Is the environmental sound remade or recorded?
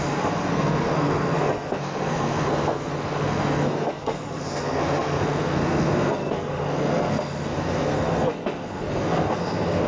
remade